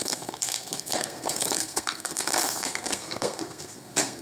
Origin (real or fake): fake